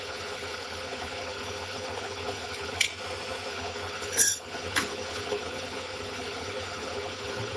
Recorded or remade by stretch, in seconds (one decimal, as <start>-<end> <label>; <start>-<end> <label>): 0.0-2.9 remade; 2.9-3.5 recorded; 3.5-7.6 remade